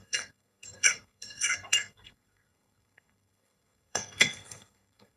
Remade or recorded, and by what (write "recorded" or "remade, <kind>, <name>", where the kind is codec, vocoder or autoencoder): remade, codec, SNAC